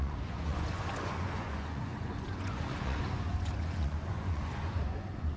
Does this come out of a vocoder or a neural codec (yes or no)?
yes